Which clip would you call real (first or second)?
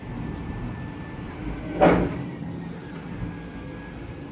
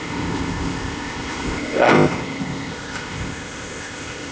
first